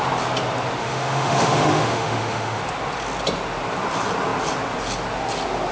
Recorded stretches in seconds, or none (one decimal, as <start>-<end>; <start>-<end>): 0.0-0.8; 2.6-5.7